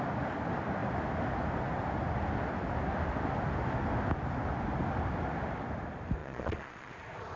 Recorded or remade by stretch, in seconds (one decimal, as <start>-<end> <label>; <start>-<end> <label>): 0.0-6.2 recorded; 6.2-6.9 remade; 6.9-7.4 recorded